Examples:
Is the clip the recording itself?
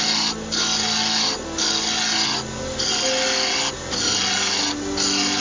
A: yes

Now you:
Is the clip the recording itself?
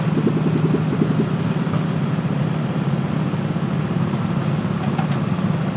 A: yes